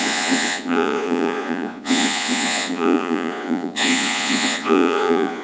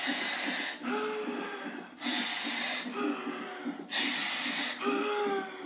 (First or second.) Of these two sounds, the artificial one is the first